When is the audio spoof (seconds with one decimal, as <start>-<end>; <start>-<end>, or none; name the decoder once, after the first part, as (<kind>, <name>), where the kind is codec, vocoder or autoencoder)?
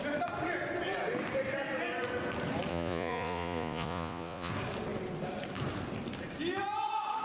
2.7-4.5 (vocoder, Vocos)